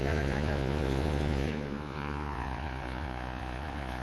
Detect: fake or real fake